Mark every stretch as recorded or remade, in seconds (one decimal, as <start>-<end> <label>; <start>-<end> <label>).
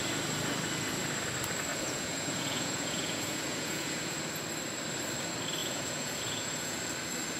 0.0-1.7 recorded; 1.7-4.2 remade; 4.2-5.6 recorded; 5.6-6.8 remade; 6.8-7.4 recorded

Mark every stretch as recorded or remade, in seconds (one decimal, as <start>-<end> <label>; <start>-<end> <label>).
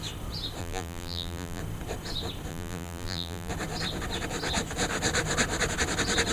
0.0-0.6 recorded; 0.6-1.6 remade; 1.6-2.5 recorded; 2.5-3.5 remade; 3.5-6.3 recorded